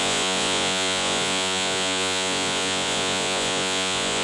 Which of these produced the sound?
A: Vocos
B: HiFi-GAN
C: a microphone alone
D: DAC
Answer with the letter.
A